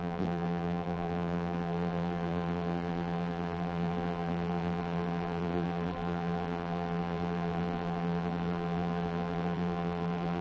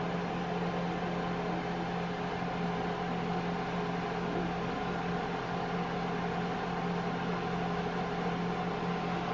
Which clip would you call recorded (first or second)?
second